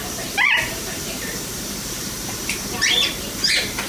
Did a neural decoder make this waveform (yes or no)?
yes